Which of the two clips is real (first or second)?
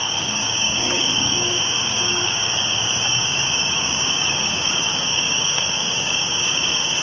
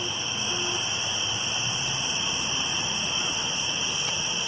second